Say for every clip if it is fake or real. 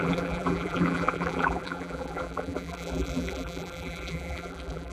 fake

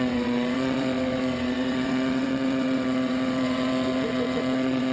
fake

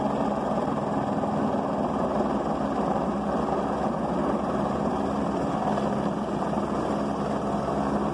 real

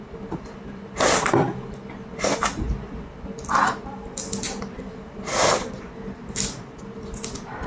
real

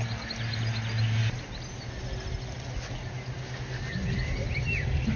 real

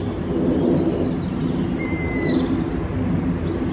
real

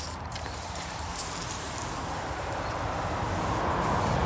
fake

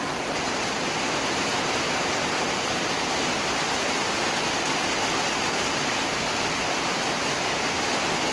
real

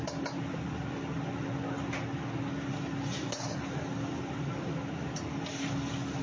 real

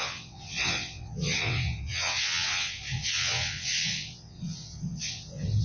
fake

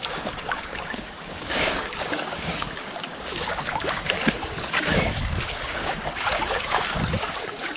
fake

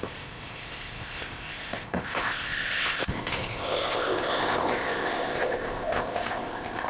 fake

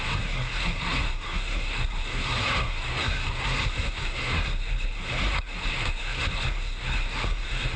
fake